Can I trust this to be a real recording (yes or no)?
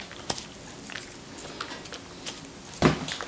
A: yes